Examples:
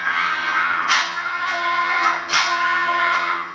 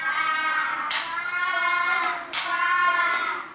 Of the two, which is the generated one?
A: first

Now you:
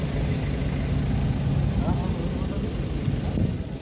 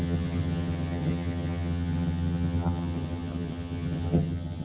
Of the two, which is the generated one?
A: second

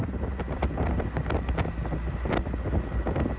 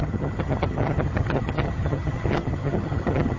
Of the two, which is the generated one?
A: second